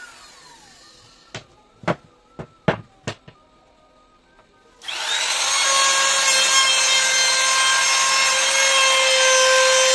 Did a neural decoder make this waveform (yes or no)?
no